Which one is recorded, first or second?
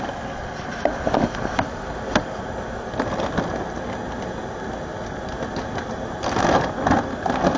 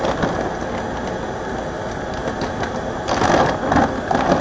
second